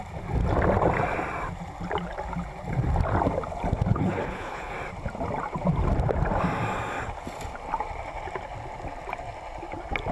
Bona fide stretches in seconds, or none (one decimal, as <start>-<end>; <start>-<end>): 0.0-3.9; 4.7-10.1